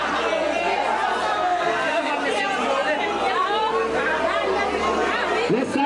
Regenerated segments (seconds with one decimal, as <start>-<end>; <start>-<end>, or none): 1.3-2.1